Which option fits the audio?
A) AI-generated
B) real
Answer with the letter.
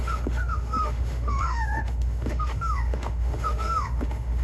A